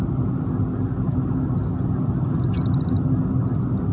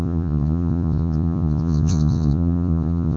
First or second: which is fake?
second